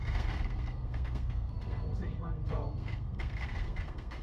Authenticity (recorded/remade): remade